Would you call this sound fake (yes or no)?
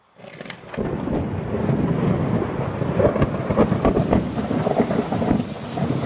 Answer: no